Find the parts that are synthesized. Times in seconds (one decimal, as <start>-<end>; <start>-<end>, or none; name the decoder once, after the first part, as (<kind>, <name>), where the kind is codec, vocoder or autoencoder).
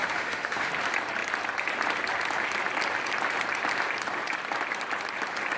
0.0-0.7 (autoencoder, DAC-VAE)